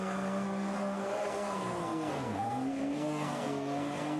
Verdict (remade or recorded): remade